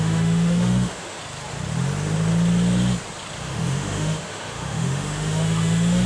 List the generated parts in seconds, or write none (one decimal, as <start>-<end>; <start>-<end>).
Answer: 0.0-1.2; 3.4-6.1